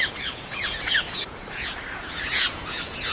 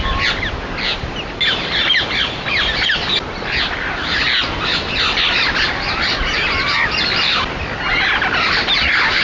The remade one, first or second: first